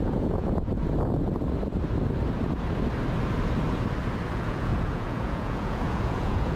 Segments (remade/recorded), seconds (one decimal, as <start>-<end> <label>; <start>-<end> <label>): 0.0-0.7 remade; 0.7-4.3 recorded; 4.3-6.6 remade